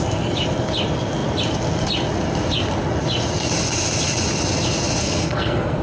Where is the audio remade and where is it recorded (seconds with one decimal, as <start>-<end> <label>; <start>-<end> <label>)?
0.0-5.0 recorded; 5.0-5.8 remade